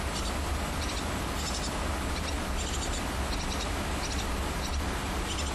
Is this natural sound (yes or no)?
yes